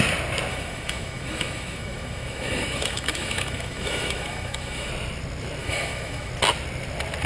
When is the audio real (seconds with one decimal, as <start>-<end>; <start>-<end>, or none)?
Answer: 0.0-0.5; 4.9-5.6; 6.3-7.3